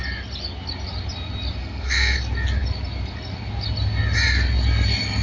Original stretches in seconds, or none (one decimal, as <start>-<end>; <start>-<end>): 0.0-1.6; 2.2-5.2